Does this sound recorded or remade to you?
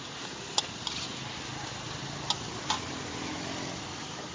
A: recorded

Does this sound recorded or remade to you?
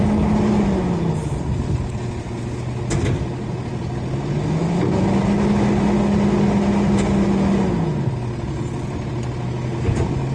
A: recorded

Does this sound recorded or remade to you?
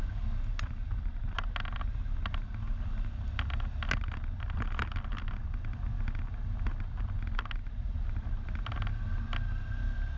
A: recorded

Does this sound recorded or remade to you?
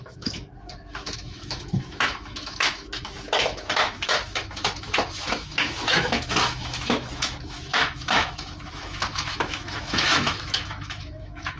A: remade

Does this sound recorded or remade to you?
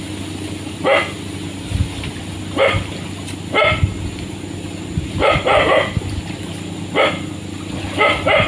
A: recorded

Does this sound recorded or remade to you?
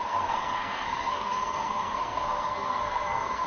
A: remade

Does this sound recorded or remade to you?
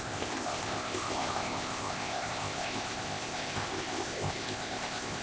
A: remade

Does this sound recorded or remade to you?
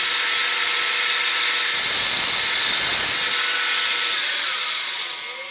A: recorded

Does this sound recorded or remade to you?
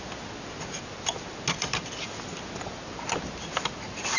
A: recorded